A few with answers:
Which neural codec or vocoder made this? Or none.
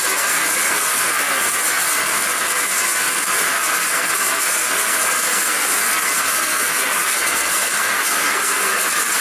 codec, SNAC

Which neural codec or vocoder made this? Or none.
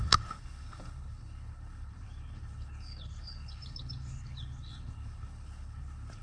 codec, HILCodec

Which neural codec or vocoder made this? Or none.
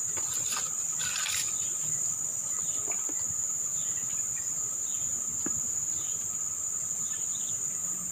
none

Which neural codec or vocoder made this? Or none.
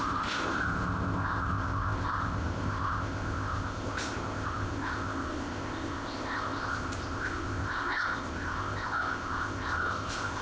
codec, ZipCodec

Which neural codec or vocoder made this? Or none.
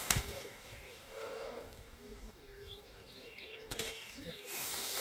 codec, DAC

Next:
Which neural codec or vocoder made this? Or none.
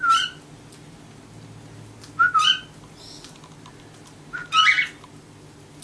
none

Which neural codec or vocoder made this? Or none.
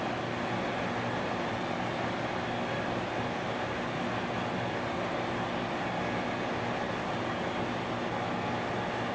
none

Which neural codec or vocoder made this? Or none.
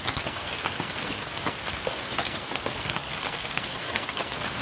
codec, SNAC